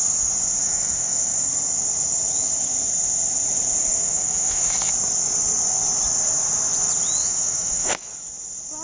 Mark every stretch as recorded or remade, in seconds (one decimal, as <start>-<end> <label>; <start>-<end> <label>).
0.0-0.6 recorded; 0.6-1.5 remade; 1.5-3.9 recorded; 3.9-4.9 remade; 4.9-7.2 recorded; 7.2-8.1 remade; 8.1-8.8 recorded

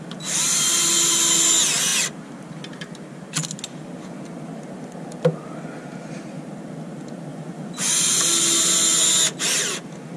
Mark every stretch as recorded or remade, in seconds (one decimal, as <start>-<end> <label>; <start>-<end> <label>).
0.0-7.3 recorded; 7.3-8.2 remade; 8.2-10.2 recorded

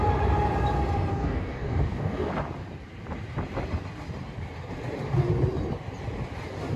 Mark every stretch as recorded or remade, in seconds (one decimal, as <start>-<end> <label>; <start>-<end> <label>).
0.0-1.1 recorded; 1.1-2.3 remade; 2.3-6.8 recorded

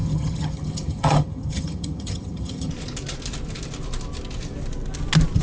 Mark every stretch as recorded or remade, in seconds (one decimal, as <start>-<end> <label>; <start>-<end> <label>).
0.0-2.7 remade; 2.7-5.4 recorded